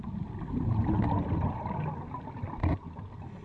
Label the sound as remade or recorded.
recorded